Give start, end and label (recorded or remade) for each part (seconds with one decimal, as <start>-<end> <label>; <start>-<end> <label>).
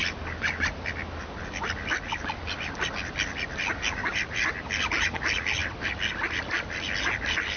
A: 0.0-7.6 recorded